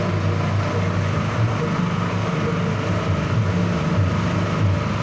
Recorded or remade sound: recorded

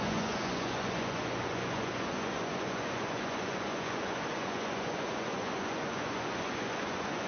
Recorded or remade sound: remade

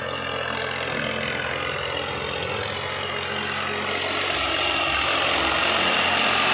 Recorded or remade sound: recorded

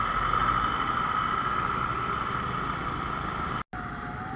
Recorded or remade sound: recorded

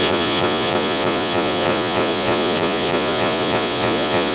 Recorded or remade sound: remade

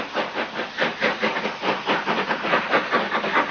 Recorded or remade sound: recorded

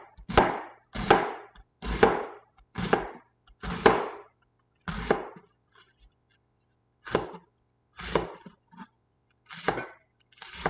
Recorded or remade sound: recorded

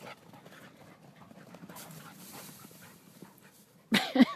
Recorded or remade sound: recorded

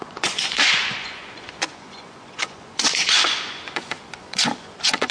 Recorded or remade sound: remade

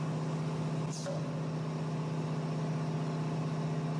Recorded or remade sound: recorded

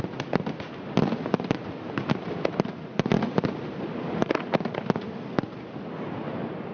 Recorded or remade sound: recorded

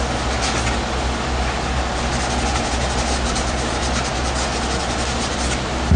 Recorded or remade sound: recorded